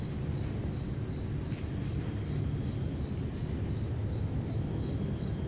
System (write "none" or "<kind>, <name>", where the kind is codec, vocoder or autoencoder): none